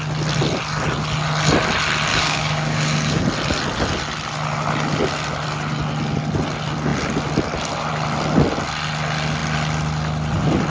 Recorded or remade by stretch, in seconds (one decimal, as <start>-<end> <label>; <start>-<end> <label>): 0.0-2.1 recorded; 2.1-3.2 remade; 3.2-10.7 recorded

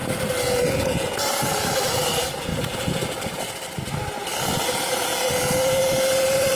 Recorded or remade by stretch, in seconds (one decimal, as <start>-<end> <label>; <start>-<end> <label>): 0.0-0.7 recorded; 0.7-2.5 remade; 2.5-4.6 recorded; 4.6-5.1 remade; 5.1-5.8 recorded; 5.8-6.6 remade